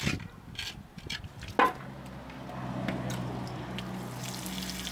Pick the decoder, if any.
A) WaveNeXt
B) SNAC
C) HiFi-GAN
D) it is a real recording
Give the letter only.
D